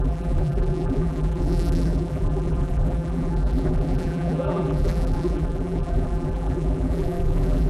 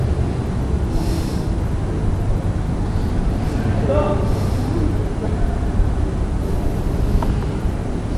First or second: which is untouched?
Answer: second